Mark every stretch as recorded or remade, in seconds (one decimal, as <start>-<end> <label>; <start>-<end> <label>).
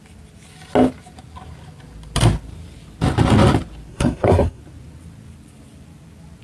0.0-3.9 recorded; 3.9-4.6 remade; 4.6-6.4 recorded